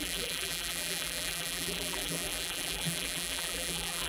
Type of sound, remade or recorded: remade